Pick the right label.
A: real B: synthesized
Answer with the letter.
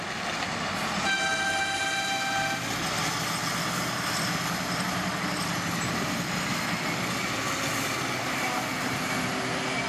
A